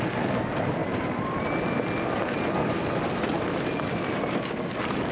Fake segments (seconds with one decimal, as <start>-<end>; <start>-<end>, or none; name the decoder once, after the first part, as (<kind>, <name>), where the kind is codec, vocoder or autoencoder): 0.8-1.5 (vocoder, BigVGAN v2)